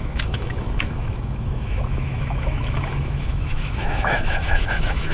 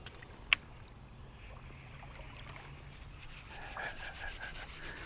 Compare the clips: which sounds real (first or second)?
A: second